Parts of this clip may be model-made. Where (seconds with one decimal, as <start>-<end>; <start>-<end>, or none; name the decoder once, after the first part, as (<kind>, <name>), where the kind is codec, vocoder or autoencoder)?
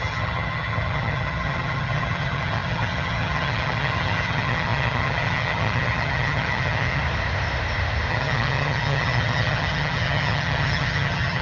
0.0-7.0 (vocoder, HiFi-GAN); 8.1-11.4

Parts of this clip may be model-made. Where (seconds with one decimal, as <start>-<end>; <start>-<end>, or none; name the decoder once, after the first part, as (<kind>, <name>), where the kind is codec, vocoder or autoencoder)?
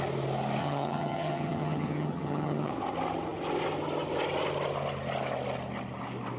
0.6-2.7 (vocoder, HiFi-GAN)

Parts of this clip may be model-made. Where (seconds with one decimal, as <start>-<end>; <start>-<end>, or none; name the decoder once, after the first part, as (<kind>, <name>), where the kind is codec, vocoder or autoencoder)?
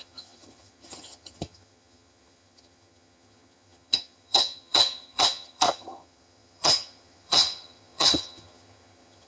0.0-9.3 (vocoder, HiFi-GAN)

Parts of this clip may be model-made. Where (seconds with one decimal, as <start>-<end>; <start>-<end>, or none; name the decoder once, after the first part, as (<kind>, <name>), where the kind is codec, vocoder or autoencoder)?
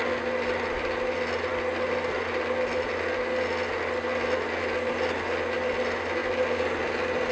none